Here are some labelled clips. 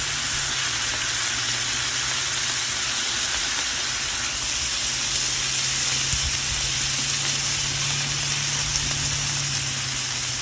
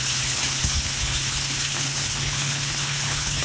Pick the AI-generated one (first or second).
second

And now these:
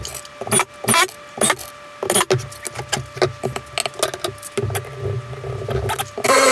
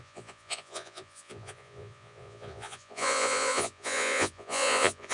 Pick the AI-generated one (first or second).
second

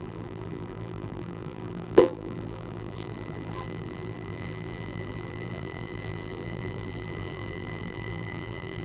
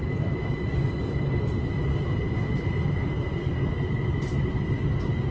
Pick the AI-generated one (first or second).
first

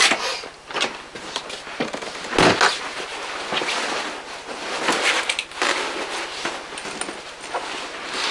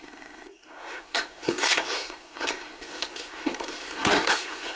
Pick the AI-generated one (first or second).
second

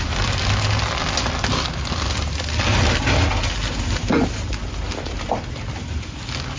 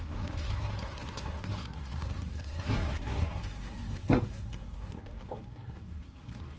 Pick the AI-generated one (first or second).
second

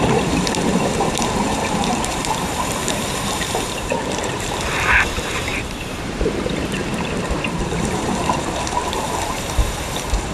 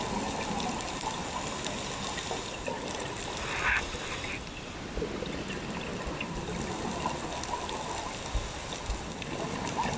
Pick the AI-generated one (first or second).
first